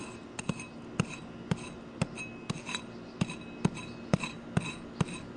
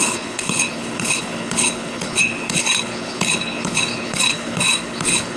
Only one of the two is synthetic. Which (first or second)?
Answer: second